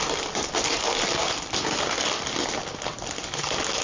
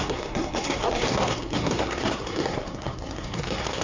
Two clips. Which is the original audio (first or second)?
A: first